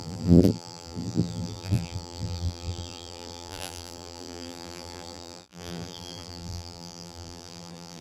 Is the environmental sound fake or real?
fake